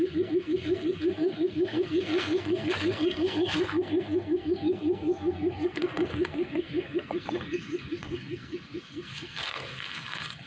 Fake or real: fake